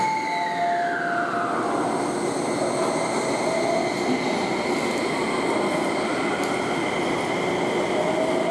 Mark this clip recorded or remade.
recorded